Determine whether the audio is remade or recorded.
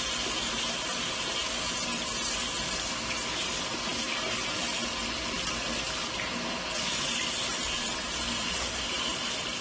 recorded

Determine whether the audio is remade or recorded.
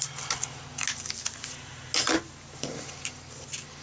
recorded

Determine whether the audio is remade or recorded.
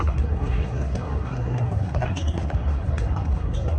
remade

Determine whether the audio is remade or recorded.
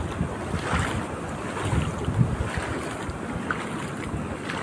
recorded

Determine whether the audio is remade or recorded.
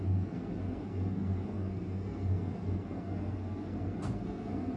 remade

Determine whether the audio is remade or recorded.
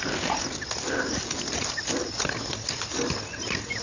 recorded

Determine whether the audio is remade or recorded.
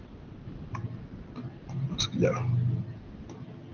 recorded